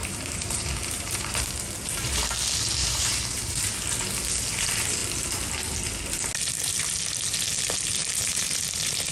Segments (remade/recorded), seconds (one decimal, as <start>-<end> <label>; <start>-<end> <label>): 0.0-2.2 remade; 2.2-2.8 recorded; 2.8-3.6 remade; 3.6-8.0 recorded; 8.0-8.6 remade; 8.6-9.1 recorded